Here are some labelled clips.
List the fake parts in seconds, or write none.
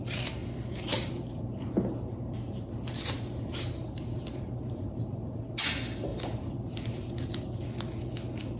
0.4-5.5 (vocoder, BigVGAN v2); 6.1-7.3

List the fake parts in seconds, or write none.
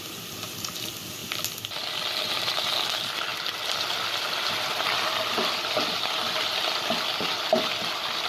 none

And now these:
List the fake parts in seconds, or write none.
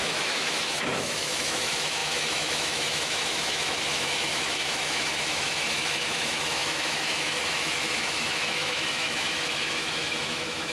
0.0-10.7 (autoencoder, DAC-VAE)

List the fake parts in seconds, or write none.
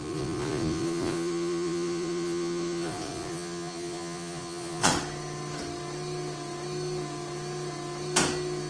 0.0-4.9 (vocoder, Vocos)